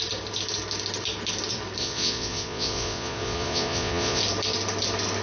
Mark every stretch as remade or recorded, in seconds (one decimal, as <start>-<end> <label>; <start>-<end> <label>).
0.0-1.8 recorded; 1.8-4.2 remade; 4.2-5.2 recorded